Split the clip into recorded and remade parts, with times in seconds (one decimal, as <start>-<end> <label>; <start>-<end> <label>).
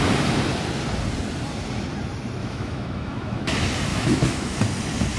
0.0-2.4 recorded; 2.4-3.5 remade; 3.5-3.9 recorded; 3.9-4.6 remade; 4.6-5.2 recorded